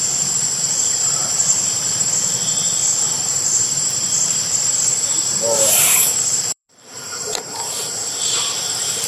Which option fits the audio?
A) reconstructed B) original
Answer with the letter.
A